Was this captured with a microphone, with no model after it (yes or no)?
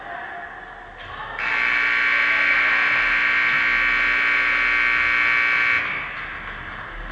yes